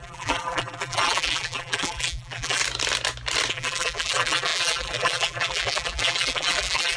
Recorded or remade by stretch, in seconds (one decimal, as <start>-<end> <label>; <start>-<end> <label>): 0.0-2.6 remade; 2.6-3.5 recorded; 3.5-7.0 remade